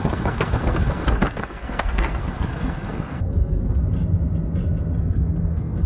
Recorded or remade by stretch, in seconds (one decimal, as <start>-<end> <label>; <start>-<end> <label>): 0.0-3.8 remade; 3.8-5.0 recorded; 5.0-5.9 remade